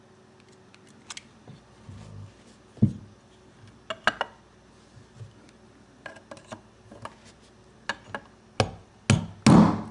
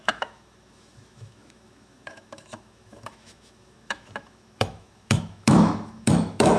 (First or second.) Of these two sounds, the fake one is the second